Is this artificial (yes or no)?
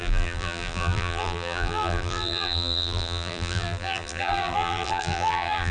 yes